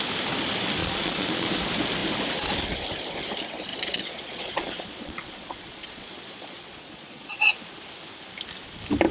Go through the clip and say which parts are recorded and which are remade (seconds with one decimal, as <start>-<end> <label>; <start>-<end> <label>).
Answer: 0.0-0.8 recorded; 0.8-1.5 remade; 1.5-3.7 recorded; 3.7-7.6 remade; 7.6-9.1 recorded